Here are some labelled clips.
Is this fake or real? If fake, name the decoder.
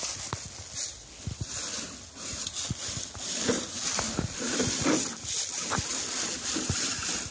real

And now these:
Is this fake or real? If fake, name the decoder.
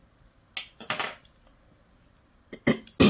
real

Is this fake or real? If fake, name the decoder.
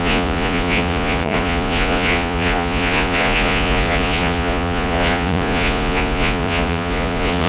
fake, vocoder, Vocos